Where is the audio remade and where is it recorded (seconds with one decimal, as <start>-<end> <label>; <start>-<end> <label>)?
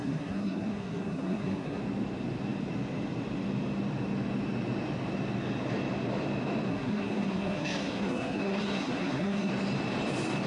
0.0-1.8 remade; 1.8-6.7 recorded; 6.7-9.5 remade; 9.5-10.5 recorded